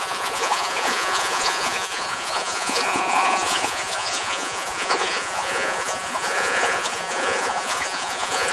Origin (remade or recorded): remade